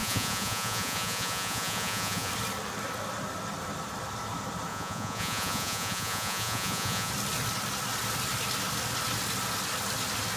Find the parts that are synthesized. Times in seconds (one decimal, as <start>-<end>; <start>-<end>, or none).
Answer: 0.0-2.3; 4.7-7.1